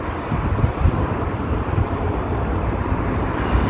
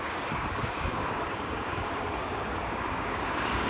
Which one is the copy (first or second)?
second